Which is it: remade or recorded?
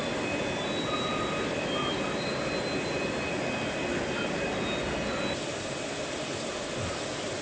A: recorded